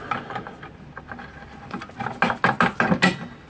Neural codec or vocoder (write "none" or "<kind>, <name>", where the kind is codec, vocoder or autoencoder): none